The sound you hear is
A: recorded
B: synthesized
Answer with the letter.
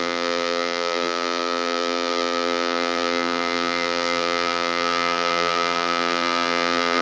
B